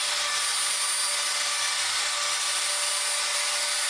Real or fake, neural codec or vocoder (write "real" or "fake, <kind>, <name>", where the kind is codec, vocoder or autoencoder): real